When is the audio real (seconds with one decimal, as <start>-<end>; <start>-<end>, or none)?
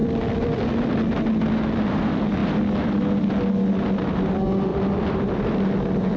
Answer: 0.7-4.7; 5.3-6.2